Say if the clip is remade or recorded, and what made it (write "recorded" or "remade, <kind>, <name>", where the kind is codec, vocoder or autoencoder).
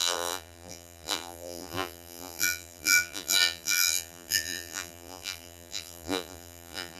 remade, vocoder, BigVGAN v2